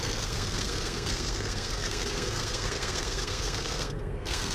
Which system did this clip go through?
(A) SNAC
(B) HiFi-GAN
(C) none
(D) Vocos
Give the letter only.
A